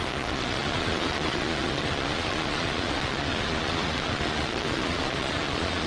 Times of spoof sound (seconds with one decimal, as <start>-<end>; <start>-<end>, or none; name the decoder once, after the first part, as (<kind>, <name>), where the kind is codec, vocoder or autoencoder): 0.0-5.9 (vocoder, Vocos)